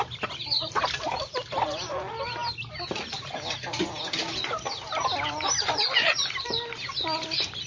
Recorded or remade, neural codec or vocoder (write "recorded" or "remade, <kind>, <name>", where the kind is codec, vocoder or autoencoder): recorded